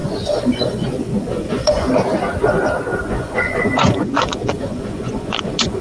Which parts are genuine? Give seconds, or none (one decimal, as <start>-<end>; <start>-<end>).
1.9-2.9

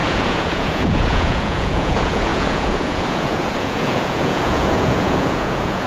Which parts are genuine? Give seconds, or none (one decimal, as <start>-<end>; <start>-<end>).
none

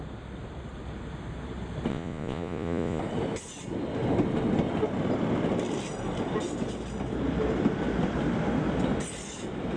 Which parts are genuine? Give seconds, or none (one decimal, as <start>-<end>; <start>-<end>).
0.0-1.9; 3.0-9.8

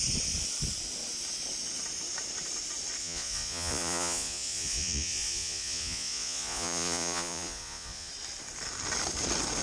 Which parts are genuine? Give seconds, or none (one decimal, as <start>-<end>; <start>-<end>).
0.0-3.0; 8.1-9.6

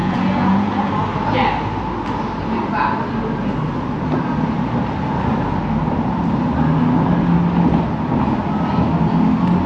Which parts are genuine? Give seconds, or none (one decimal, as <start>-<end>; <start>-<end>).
0.9-9.7